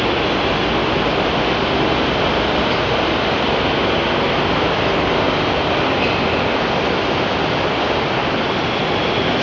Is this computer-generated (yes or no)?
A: no